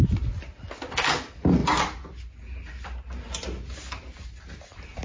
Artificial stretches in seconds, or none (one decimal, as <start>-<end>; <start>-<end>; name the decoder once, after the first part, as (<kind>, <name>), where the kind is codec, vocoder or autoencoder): 0.0-1.6 (vocoder, BigVGAN v2); 4.6-5.0